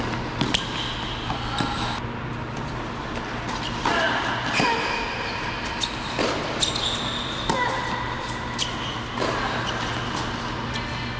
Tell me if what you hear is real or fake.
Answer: real